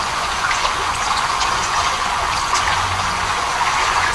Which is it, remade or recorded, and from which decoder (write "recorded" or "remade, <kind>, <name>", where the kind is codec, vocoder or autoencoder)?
remade, vocoder, Vocos